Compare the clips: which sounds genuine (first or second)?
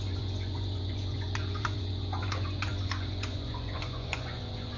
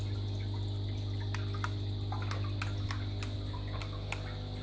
second